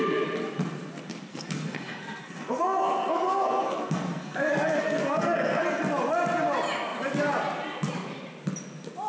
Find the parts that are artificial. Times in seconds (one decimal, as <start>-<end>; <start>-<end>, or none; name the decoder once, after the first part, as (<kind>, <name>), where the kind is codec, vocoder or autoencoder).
1.3-5.8 (codec, SNAC)